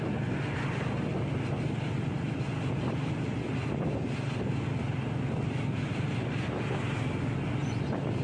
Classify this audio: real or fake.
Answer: real